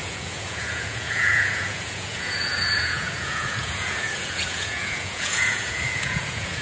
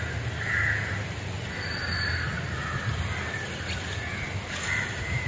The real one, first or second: second